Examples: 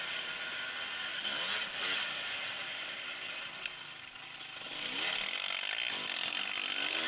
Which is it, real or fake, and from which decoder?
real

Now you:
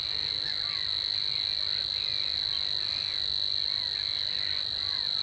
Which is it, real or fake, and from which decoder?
real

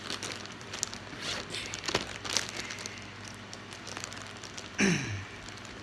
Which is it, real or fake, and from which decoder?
real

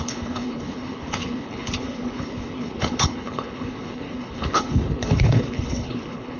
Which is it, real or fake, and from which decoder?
fake, codec, HILCodec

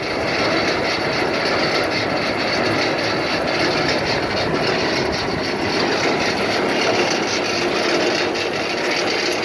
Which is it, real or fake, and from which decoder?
real